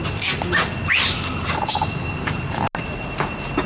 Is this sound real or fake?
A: real